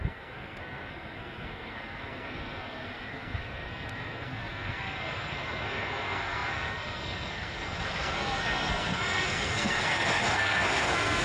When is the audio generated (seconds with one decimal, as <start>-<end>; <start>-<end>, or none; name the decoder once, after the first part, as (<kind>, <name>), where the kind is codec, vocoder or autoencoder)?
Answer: 0.0-11.2 (codec, SNAC)